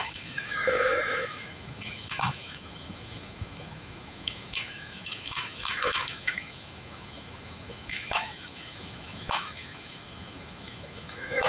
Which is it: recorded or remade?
remade